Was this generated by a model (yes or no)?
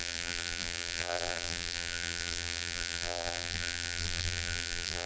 yes